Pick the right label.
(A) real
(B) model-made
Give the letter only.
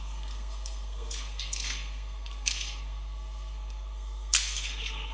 B